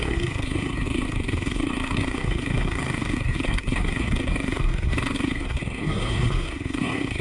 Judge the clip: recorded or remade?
remade